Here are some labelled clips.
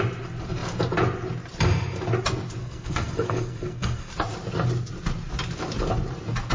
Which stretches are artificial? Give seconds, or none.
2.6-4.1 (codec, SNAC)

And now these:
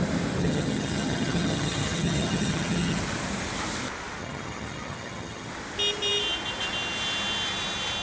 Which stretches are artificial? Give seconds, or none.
0.4-3.0 (vocoder, HiFi-GAN); 4.2-5.5

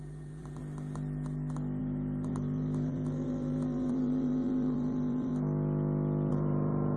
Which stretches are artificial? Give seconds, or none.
0.0-0.6 (vocoder, BigVGAN v2); 1.8-5.3; 6.3-7.0